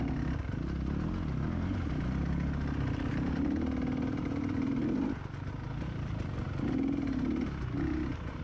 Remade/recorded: recorded